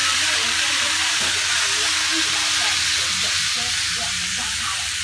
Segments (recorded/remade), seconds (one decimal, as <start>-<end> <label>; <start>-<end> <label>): 0.0-0.9 remade; 0.9-4.0 recorded; 4.0-5.0 remade